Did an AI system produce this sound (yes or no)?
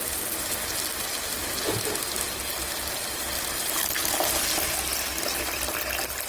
no